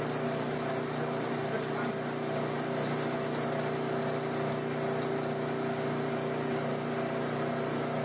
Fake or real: real